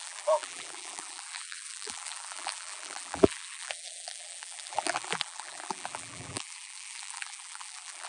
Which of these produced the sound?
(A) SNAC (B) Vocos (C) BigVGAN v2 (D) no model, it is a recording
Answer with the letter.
C